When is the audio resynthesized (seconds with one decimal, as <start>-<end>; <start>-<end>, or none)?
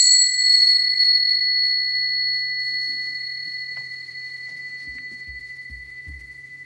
0.0-1.4; 3.1-4.6; 5.4-6.6